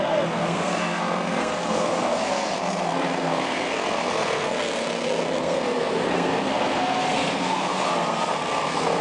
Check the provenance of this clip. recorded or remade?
remade